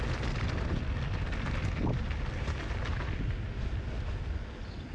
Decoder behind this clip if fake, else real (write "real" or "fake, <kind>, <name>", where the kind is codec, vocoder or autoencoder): real